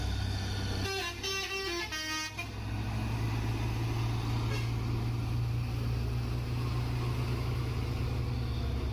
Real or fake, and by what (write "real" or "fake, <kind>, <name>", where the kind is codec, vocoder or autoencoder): real